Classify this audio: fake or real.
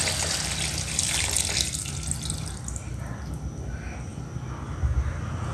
real